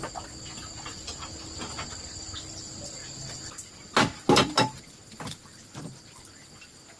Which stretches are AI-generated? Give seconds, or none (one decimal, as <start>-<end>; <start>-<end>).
none